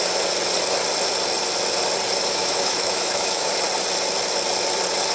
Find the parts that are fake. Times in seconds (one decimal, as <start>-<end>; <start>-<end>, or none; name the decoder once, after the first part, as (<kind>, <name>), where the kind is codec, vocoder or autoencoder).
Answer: 2.4-3.5 (autoencoder, DAC-VAE)